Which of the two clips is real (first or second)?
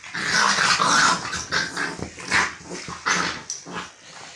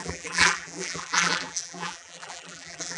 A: first